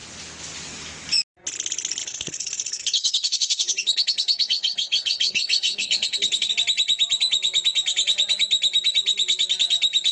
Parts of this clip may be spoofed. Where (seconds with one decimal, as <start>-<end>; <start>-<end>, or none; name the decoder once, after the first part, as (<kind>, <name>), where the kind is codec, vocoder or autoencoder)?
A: 2.0-6.5 (codec, HILCodec)